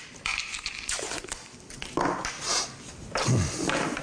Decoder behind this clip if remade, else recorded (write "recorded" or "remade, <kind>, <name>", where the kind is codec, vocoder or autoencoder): recorded